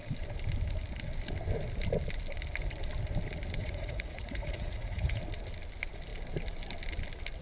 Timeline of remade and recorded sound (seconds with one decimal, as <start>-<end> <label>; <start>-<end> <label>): 0.0-3.6 recorded; 3.6-5.2 remade; 5.2-7.4 recorded